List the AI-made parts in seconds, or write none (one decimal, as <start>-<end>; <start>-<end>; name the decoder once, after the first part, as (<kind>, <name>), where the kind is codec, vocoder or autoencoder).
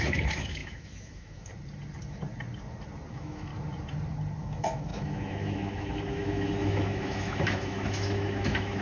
0.0-1.5 (autoencoder, DAC-VAE); 3.1-3.5; 4.4-8.8